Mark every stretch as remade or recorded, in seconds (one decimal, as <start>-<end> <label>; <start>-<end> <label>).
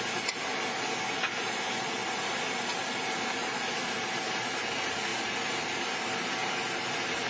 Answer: 0.0-7.3 recorded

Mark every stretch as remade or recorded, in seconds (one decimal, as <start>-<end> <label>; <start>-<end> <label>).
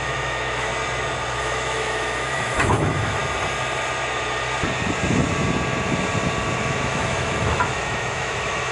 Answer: 0.0-0.7 remade; 0.7-1.4 recorded; 1.4-3.2 remade; 3.2-6.6 recorded; 6.6-8.7 remade